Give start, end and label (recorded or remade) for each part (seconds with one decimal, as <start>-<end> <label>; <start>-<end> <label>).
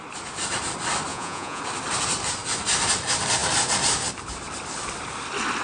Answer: 0.0-1.1 recorded; 1.1-1.6 remade; 1.6-5.6 recorded